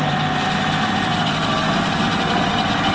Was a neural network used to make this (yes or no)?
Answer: yes